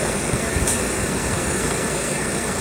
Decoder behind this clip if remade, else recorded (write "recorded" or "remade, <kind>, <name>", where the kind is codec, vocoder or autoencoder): remade, codec, SNAC